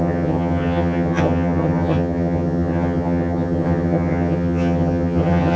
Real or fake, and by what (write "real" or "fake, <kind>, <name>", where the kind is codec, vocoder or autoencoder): fake, vocoder, HiFi-GAN